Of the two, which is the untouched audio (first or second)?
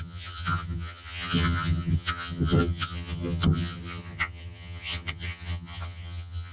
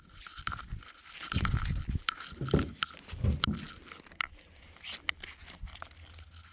second